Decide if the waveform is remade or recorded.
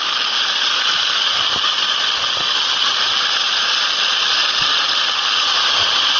recorded